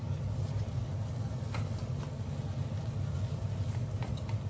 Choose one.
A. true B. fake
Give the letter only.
A